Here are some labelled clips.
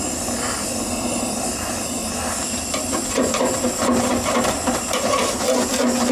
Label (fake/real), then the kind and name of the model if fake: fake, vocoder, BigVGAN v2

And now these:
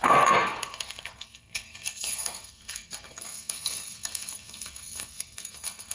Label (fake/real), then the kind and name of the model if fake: fake, codec, SNAC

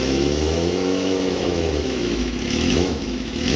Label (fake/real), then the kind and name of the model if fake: fake, autoencoder, DAC-VAE